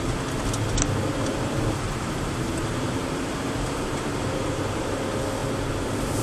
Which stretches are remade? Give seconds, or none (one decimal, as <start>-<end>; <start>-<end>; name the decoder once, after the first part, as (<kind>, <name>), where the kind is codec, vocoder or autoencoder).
1.3-5.0 (vocoder, BigVGAN v2)